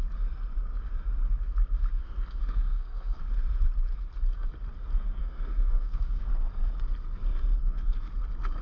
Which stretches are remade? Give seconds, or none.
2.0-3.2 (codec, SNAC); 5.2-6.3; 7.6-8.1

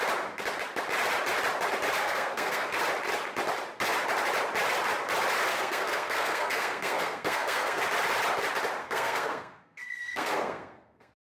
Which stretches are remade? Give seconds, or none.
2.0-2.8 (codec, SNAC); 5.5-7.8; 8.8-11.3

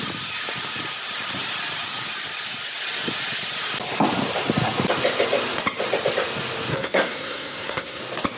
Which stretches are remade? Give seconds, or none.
6.7-8.0 (codec, SNAC)

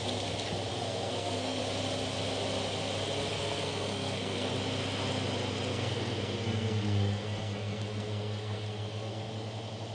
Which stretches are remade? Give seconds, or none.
0.7-1.6 (codec, SNAC); 3.3-4.5; 5.7-9.3

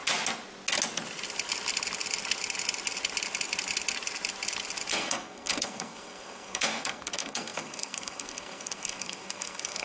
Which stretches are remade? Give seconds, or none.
4.9-9.8 (codec, SNAC)

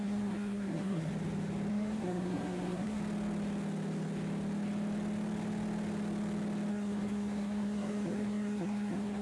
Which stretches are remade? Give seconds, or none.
0.0-1.1 (codec, SNAC); 1.7-3.0; 6.7-9.2

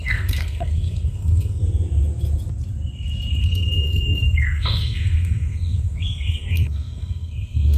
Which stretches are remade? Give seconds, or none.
0.0-1.6 (codec, SNAC); 3.4-7.8